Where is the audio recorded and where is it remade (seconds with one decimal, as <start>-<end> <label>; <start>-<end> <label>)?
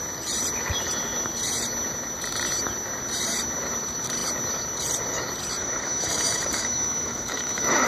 0.0-5.6 recorded; 5.6-7.9 remade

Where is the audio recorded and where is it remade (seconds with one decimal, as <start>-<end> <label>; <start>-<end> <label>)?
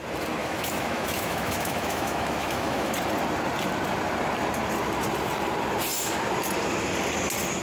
0.0-0.4 recorded; 0.4-2.9 remade; 2.9-7.6 recorded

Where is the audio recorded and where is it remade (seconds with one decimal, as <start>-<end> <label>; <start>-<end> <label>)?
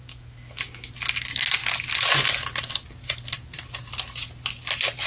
0.0-0.9 remade; 0.9-5.1 recorded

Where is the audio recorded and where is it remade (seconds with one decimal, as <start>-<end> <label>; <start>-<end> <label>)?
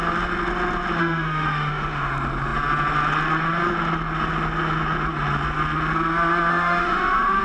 0.0-1.0 recorded; 1.0-2.1 remade; 2.1-6.5 recorded; 6.5-7.4 remade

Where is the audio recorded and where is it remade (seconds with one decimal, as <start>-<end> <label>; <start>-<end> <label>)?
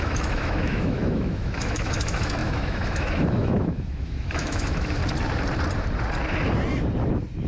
0.0-5.0 remade; 5.0-7.5 recorded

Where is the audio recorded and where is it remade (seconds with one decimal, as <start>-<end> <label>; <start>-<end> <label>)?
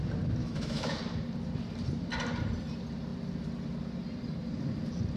0.0-0.4 recorded; 0.4-1.0 remade; 1.0-5.2 recorded